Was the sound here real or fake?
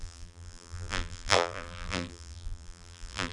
fake